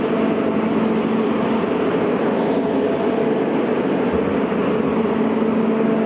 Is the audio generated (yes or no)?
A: no